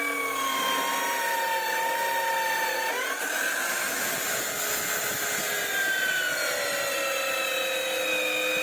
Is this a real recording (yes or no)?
yes